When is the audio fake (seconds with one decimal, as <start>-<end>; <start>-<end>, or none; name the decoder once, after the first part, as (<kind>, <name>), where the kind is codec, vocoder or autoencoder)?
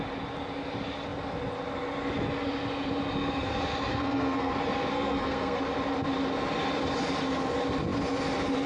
3.9-4.5 (codec, SNAC); 4.9-5.6